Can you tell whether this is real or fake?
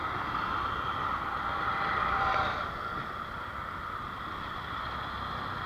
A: real